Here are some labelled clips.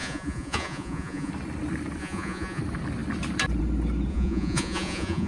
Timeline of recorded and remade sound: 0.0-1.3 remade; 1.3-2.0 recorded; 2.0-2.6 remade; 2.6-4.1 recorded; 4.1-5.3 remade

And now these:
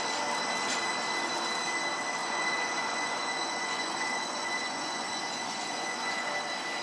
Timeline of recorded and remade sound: 0.0-2.2 recorded; 2.2-6.3 remade; 6.3-6.8 recorded

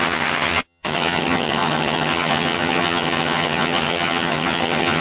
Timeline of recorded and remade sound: 0.0-5.0 remade

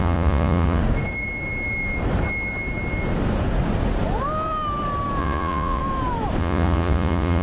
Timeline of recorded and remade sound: 0.0-0.8 remade; 0.8-5.2 recorded; 5.2-5.8 remade; 5.8-6.4 recorded; 6.4-7.4 remade

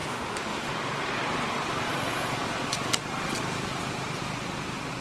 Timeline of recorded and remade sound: 0.0-0.7 remade; 0.7-5.0 recorded

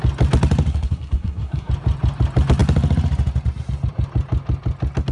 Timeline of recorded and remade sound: 0.0-0.7 recorded; 0.7-1.7 remade; 1.7-5.1 recorded

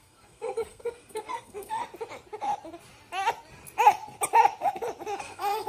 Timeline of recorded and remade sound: 0.0-1.8 remade; 1.8-5.2 recorded; 5.2-5.7 remade

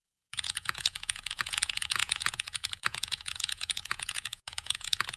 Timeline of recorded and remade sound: 0.0-5.2 remade